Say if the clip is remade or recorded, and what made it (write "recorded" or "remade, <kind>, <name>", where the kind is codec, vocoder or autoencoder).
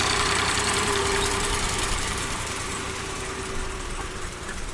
remade, vocoder, BigVGAN v2